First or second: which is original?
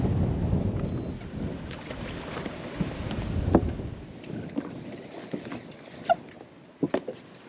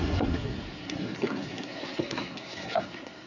first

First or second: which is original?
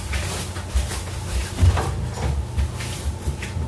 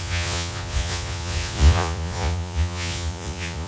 first